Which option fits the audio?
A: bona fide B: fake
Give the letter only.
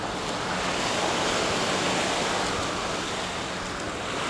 A